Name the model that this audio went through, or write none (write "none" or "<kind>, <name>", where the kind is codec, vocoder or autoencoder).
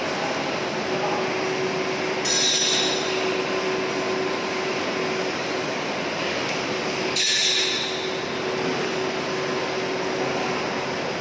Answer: none